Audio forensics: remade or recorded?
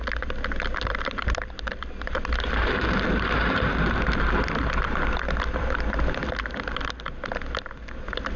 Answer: recorded